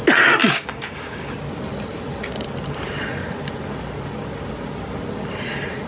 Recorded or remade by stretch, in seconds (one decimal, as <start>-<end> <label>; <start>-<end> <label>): 0.0-0.4 recorded; 0.4-1.3 remade; 1.3-5.9 recorded